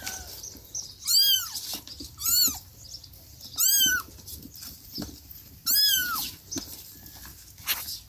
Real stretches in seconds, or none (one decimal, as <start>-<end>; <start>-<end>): 0.0-8.1